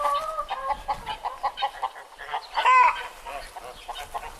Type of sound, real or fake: real